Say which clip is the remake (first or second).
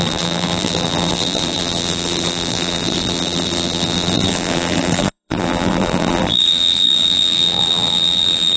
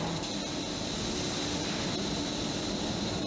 first